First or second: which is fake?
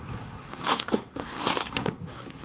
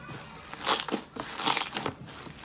first